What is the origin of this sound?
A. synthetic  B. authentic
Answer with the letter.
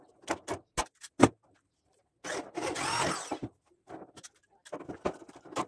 B